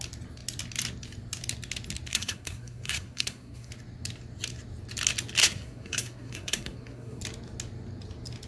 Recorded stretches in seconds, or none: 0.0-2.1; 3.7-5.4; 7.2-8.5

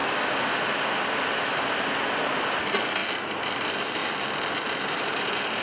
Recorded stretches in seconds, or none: 0.0-5.6

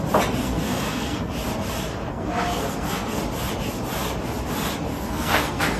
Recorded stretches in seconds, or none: 0.0-0.4; 1.3-2.1; 3.2-4.9

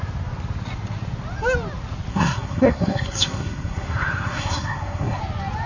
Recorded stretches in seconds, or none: 0.0-2.1; 5.2-5.7

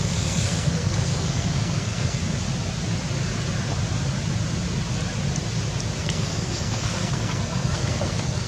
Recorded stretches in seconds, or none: 2.2-6.0

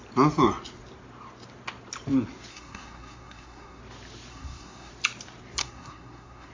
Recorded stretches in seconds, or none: 0.0-2.5; 3.8-4.3; 4.9-5.6

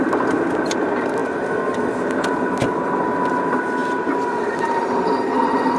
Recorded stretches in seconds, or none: 0.0-5.8

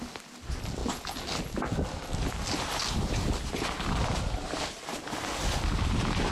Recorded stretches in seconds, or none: 0.0-6.3